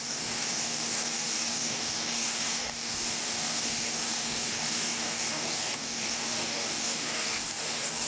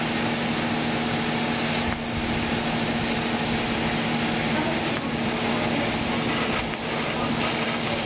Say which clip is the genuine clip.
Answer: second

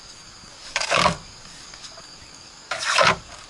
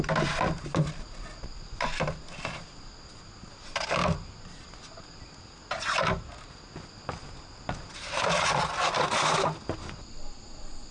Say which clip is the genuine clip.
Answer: second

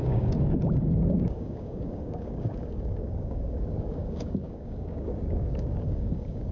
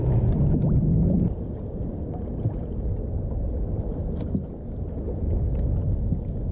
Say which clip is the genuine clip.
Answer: second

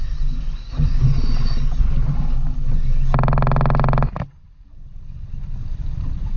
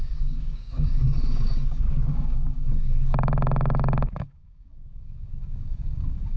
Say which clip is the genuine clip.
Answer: first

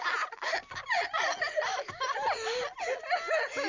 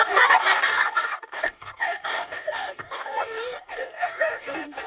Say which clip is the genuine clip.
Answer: first